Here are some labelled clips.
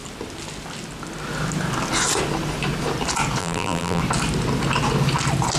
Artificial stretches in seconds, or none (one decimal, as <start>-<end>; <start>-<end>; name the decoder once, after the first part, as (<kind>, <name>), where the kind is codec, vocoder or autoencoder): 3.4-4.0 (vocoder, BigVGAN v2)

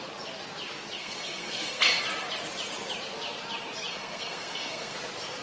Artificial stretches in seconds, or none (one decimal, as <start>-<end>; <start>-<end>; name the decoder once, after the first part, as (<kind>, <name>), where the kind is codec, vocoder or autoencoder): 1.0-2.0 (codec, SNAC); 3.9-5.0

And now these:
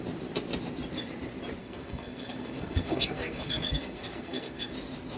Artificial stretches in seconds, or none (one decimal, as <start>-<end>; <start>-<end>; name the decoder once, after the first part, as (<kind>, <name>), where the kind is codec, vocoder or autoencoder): 1.6-4.7 (codec, SNAC)